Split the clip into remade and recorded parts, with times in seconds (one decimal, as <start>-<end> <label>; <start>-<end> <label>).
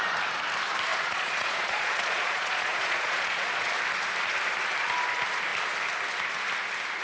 0.0-0.9 recorded; 0.9-3.8 remade; 3.8-7.0 recorded